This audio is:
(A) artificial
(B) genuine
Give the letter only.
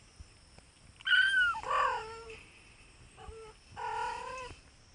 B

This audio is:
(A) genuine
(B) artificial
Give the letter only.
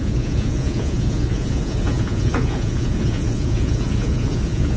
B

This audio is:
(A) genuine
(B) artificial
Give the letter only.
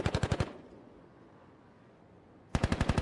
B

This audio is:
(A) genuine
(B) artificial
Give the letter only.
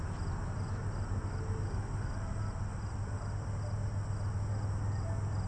A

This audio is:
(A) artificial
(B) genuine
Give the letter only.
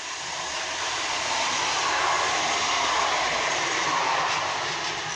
B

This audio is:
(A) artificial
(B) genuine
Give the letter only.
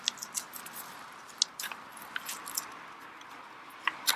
B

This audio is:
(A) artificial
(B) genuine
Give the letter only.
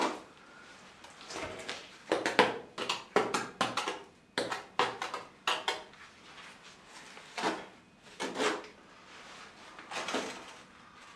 B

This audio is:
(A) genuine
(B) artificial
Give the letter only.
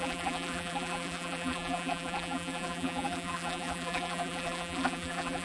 B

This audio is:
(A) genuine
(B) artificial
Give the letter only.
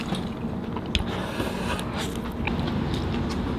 A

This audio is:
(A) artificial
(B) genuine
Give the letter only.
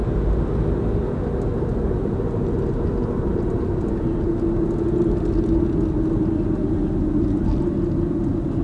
B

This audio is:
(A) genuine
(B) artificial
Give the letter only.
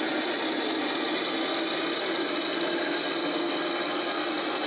A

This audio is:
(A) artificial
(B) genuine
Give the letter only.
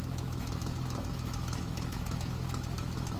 A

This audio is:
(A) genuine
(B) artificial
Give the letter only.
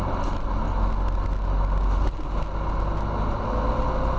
A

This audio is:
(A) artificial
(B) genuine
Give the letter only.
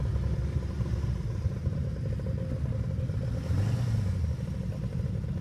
B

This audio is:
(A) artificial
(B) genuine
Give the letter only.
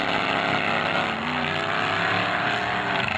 B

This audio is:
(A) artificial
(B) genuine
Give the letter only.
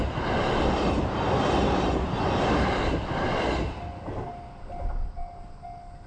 B